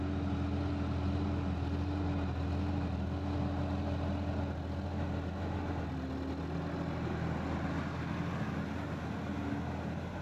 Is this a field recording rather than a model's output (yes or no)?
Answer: yes